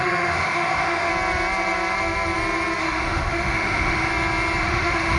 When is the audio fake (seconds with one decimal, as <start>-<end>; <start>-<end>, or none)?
0.0-1.1; 2.8-4.1; 4.6-5.2